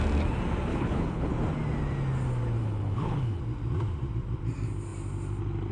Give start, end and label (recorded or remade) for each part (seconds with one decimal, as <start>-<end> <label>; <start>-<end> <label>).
0.0-0.7 recorded; 0.7-1.3 remade; 1.3-2.6 recorded; 2.6-3.4 remade; 3.4-5.7 recorded